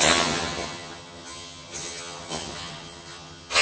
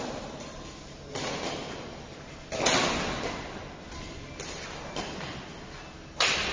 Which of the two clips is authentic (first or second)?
second